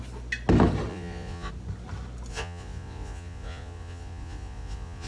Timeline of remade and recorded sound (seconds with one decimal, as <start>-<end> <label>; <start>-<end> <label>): 0.0-0.9 recorded; 0.9-1.5 remade; 1.5-2.3 recorded; 2.3-5.1 remade